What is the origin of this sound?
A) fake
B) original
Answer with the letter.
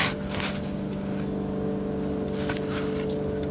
B